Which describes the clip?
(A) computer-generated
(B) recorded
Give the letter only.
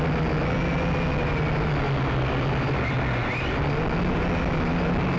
B